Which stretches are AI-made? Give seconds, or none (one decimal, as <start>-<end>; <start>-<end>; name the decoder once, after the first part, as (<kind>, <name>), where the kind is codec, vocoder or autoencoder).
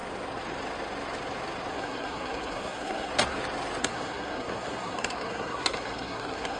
1.7-3.1 (codec, SNAC); 3.8-6.6